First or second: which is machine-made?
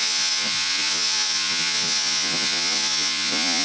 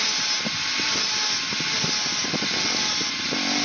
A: first